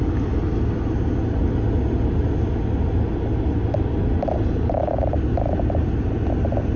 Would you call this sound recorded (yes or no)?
yes